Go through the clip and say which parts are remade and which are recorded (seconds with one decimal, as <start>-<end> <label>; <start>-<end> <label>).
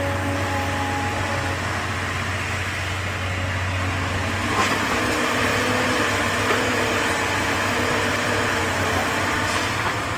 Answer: 0.0-10.2 recorded